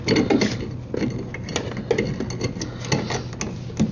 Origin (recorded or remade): recorded